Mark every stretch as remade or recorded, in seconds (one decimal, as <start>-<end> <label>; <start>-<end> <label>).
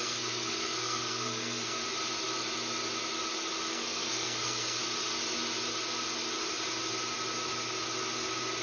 0.0-1.8 remade; 1.8-3.7 recorded; 3.7-4.8 remade; 4.8-8.6 recorded